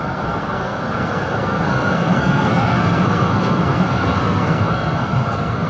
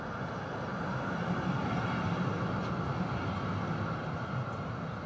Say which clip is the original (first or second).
second